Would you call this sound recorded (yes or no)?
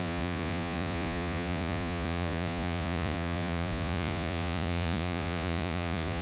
no